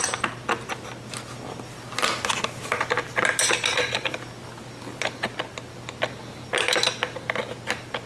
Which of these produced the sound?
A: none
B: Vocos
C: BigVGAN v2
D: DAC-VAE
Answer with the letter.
A